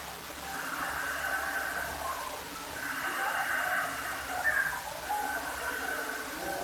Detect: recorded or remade recorded